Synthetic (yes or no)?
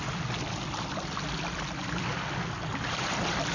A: no